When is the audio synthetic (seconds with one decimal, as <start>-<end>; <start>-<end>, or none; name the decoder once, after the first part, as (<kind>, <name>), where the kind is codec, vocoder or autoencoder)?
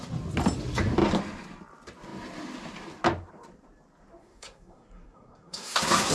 4.2-6.1 (codec, SNAC)